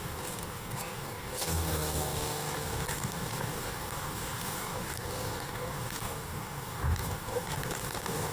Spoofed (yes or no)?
yes